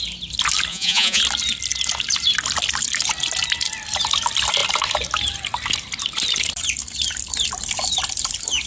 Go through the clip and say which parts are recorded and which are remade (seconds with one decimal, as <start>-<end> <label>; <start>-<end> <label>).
0.0-0.7 recorded; 0.7-1.2 remade; 1.2-8.7 recorded